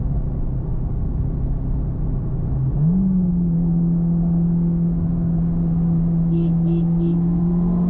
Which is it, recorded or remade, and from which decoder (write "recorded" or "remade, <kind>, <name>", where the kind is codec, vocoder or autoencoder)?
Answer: recorded